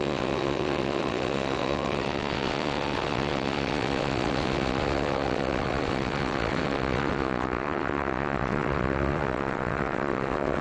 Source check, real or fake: fake